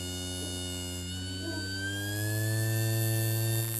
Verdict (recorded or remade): recorded